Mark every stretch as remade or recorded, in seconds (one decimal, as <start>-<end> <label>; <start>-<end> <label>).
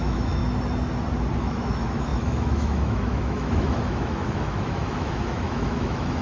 0.0-0.4 remade; 0.4-1.4 recorded; 1.4-6.2 remade